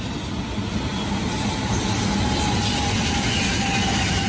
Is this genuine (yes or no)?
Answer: yes